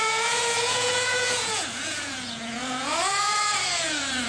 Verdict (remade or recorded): remade